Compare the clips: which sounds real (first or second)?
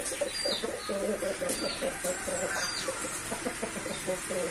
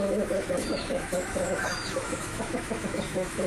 first